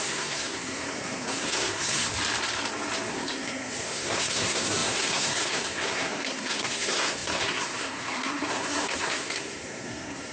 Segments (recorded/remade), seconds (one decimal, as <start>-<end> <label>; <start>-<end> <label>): 0.0-2.1 remade; 2.1-3.1 recorded; 3.1-10.3 remade